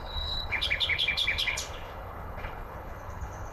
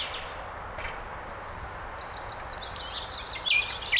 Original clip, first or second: second